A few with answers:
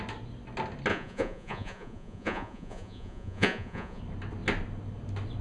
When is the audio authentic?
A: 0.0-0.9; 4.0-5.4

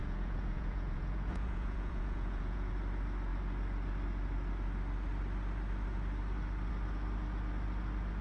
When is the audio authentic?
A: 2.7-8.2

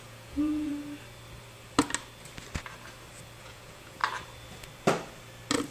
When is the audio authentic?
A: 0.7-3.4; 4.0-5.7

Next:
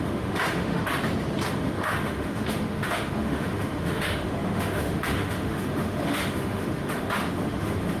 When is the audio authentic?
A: 0.8-1.5

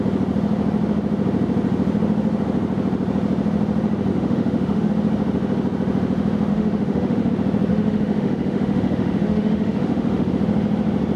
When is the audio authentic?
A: 0.0-4.1; 4.9-6.5; 7.3-7.7; 10.3-11.2

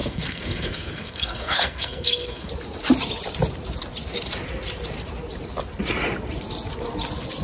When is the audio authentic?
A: 2.5-7.4